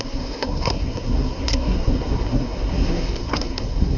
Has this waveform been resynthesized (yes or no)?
yes